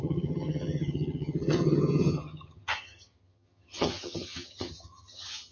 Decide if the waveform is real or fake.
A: fake